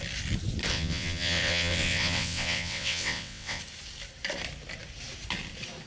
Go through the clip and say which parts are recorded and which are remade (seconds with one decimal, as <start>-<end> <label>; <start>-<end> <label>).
0.0-0.7 recorded; 0.7-3.6 remade; 3.6-5.9 recorded